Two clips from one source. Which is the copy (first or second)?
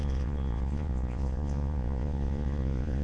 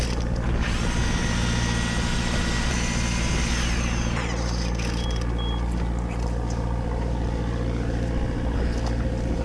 first